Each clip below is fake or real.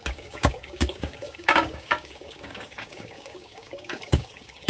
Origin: fake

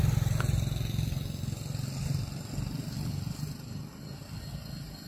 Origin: real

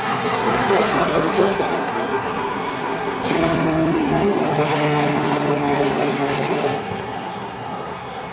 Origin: fake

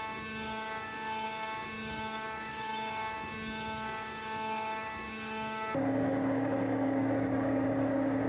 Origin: fake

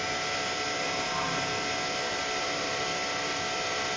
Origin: real